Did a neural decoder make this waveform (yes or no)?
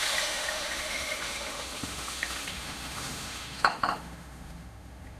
yes